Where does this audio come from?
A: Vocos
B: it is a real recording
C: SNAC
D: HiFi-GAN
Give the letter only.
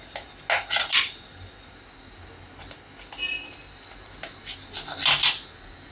B